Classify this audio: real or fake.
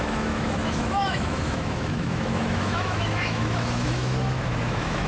fake